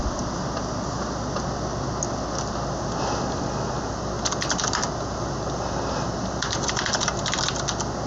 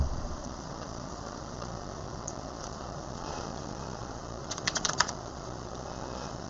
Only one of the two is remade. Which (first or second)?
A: second